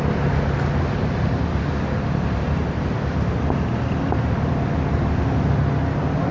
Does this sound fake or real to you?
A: real